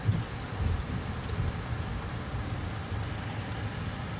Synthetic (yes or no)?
no